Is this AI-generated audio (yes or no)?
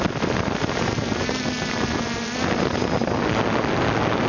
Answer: no